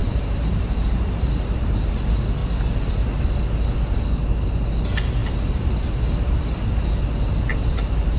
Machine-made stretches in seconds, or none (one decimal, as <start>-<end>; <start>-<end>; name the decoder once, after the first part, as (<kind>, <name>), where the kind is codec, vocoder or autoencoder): 0.0-2.0 (vocoder, BigVGAN v2); 2.4-3.4; 5.2-6.6; 7.5-8.2

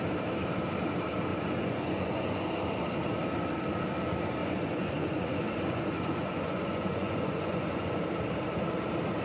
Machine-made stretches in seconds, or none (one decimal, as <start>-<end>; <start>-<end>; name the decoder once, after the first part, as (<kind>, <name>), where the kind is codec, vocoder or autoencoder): 1.3-2.5 (vocoder, Vocos); 4.4-8.0

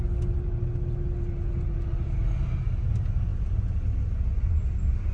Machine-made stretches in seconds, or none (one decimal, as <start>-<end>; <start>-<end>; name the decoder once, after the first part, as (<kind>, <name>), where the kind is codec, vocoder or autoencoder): none

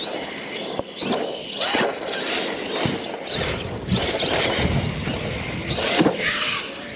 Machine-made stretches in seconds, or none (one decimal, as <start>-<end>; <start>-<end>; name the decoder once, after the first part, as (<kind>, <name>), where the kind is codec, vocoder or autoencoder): none

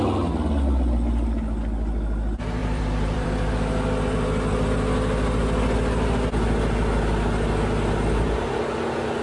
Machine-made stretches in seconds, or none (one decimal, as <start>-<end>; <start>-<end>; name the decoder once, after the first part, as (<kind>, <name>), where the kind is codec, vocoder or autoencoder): 2.6-3.5 (vocoder, BigVGAN v2)

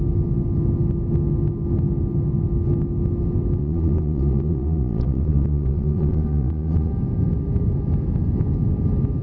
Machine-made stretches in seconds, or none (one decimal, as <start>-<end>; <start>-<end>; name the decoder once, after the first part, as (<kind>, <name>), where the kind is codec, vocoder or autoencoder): 3.6-6.9 (vocoder, Vocos)

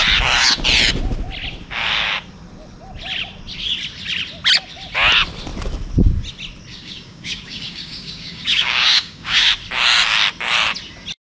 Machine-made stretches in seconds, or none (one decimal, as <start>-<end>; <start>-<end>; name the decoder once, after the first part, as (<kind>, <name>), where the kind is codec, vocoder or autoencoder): 6.7-9.5 (codec, DAC)

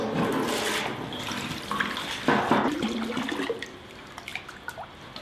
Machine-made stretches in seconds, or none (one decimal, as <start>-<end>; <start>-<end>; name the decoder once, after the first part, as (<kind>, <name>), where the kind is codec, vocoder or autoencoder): none